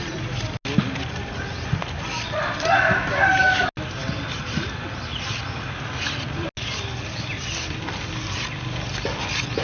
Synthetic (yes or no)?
no